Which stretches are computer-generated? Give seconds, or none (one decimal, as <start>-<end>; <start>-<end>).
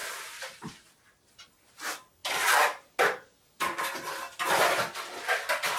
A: 0.0-1.3